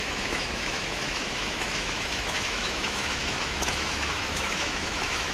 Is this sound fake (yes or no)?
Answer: yes